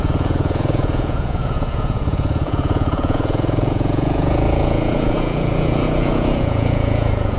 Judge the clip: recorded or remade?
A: remade